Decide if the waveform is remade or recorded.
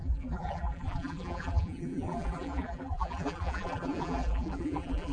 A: remade